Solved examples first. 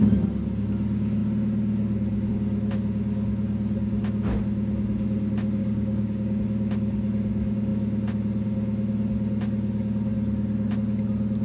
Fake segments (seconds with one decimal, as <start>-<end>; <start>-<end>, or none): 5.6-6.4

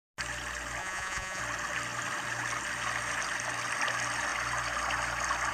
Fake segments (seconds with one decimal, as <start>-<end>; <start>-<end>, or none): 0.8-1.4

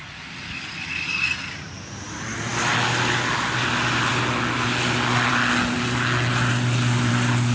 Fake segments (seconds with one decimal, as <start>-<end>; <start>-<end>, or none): none